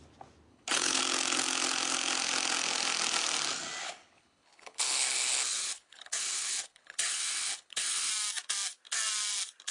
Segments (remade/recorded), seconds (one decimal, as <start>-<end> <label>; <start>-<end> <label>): 0.0-0.5 recorded; 0.5-1.0 remade; 1.0-3.8 recorded; 3.8-8.1 remade; 8.1-9.7 recorded